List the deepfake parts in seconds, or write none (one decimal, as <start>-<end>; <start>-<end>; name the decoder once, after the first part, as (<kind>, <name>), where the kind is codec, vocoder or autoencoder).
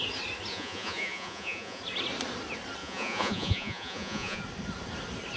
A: 0.5-1.8 (vocoder, Vocos); 2.8-4.4